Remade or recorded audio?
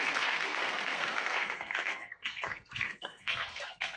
remade